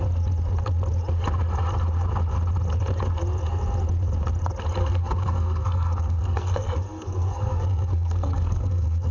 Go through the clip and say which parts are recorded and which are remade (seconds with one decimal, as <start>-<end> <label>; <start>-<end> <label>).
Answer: 0.0-4.8 recorded; 4.8-9.1 remade